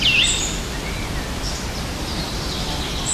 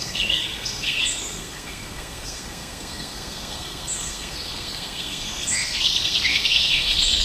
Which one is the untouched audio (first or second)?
first